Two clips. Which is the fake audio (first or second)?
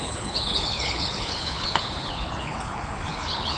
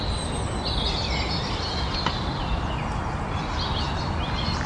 first